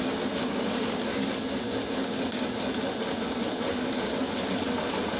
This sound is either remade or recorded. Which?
recorded